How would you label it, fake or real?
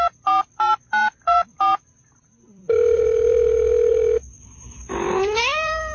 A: fake